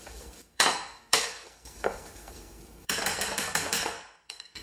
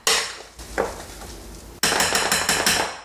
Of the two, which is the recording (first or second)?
second